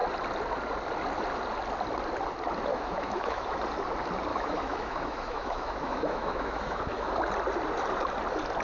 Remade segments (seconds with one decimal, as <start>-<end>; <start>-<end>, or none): 2.7-3.6; 4.3-7.1